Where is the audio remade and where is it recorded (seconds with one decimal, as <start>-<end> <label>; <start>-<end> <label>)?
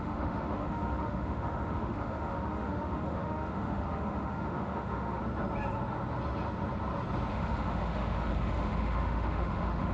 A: 0.0-5.2 remade; 5.2-7.3 recorded; 7.3-9.9 remade